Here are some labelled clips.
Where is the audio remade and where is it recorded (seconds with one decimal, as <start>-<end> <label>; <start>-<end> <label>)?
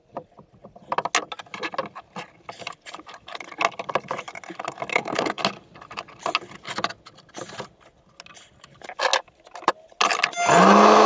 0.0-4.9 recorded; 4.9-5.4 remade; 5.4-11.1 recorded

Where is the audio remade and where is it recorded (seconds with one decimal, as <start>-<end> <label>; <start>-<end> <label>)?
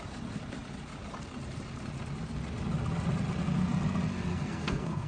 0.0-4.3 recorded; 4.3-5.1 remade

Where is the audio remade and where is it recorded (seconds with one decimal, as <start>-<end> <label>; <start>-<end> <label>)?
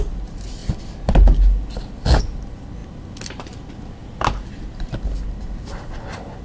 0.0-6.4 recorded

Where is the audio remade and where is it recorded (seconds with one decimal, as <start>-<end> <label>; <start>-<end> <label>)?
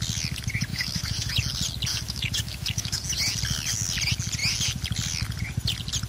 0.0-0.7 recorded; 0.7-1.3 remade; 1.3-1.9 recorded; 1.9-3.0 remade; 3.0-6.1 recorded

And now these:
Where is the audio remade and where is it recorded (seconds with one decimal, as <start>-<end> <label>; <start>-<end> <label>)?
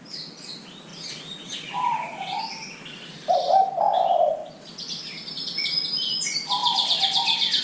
0.0-0.9 recorded; 0.9-2.4 remade; 2.4-7.6 recorded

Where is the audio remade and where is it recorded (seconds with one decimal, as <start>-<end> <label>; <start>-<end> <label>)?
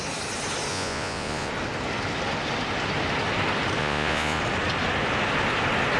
0.0-0.7 recorded; 0.7-1.5 remade; 1.5-3.8 recorded; 3.8-4.4 remade; 4.4-6.0 recorded